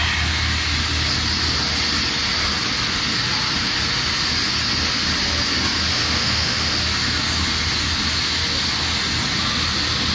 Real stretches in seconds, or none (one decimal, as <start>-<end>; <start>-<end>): 0.0-5.9; 6.7-10.1